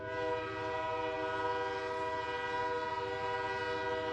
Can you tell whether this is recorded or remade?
recorded